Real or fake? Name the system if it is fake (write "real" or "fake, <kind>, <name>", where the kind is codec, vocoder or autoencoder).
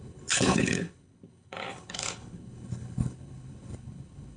fake, codec, HILCodec